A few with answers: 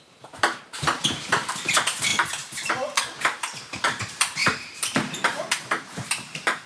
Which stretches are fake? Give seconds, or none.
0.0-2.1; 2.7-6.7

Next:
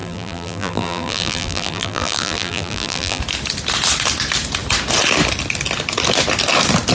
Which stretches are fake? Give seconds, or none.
0.0-3.2

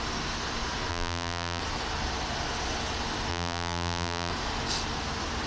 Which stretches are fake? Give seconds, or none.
0.9-1.6; 3.3-4.3

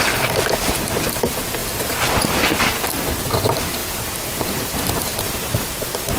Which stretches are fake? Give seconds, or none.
0.0-1.6; 2.6-6.2